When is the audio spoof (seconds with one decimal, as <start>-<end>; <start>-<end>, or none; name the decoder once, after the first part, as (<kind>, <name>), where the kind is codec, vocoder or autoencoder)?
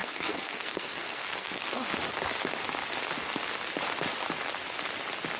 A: 0.0-1.9 (codec, SNAC)